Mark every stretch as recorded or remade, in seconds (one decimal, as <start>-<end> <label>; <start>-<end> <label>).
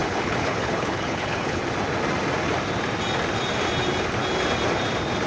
0.0-1.6 remade; 1.6-5.3 recorded